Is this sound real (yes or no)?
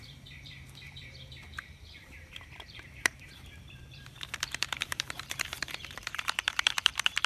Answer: no